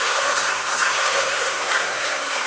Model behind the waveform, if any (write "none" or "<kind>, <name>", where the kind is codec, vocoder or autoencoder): codec, SNAC